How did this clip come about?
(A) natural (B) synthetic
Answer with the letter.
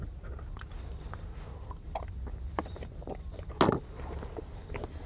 A